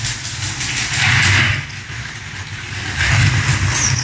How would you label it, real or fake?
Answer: real